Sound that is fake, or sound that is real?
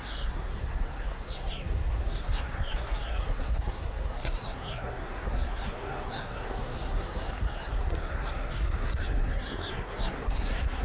fake